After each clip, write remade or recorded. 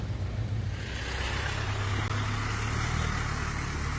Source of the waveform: recorded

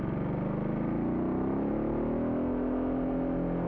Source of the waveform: recorded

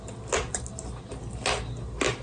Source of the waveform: recorded